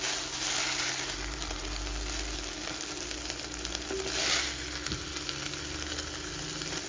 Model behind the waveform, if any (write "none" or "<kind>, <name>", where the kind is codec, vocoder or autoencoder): none